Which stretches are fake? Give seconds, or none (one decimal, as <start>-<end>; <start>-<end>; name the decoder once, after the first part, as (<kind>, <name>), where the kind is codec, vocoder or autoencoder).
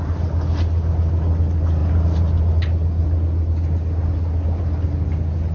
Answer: none